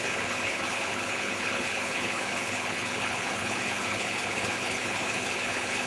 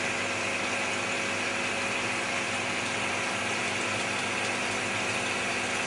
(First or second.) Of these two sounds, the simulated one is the first